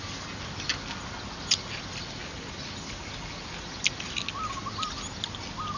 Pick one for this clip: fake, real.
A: real